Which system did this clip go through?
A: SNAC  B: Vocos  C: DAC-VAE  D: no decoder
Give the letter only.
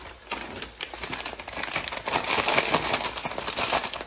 D